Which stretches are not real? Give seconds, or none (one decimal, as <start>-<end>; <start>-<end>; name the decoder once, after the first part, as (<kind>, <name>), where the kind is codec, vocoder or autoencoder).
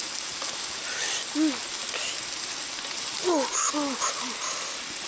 none